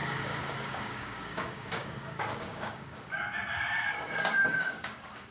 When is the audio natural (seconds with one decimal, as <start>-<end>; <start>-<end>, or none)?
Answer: 3.2-3.9